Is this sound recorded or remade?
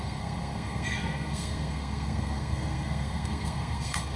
remade